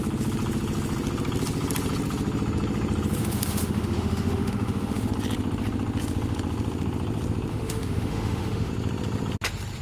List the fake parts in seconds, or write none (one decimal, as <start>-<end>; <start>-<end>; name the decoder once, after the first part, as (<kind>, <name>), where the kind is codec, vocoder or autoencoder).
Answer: 3.2-5.1 (autoencoder, DAC-VAE); 7.5-8.7